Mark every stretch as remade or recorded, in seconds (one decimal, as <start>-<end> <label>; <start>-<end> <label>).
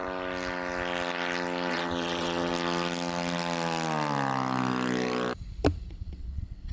0.0-1.7 recorded; 1.7-2.5 remade; 2.5-5.9 recorded; 5.9-6.7 remade